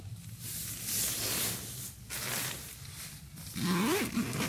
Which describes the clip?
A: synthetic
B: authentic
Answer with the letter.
B